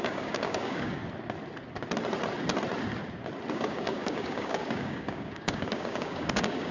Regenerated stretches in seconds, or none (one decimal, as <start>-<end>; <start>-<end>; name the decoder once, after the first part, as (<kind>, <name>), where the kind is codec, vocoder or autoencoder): 0.0-1.0 (codec, DAC); 3.5-6.7